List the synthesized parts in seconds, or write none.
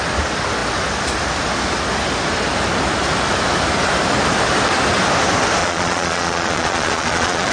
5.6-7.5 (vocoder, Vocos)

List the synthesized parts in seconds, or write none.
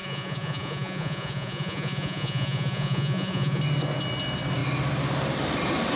0.0-3.6 (vocoder, Vocos)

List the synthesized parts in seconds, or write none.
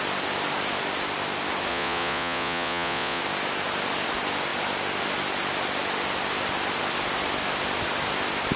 1.7-3.2 (vocoder, Vocos)